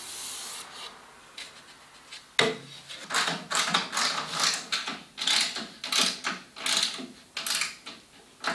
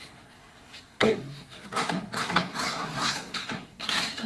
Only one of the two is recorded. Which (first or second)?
first